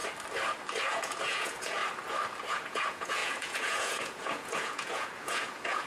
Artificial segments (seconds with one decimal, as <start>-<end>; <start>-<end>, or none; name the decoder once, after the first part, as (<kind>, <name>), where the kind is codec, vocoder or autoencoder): 0.9-1.8 (vocoder, Vocos); 2.5-5.9